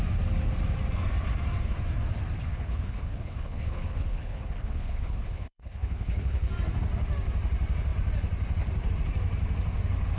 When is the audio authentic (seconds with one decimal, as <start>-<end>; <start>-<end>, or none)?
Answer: 0.0-2.4; 6.5-10.2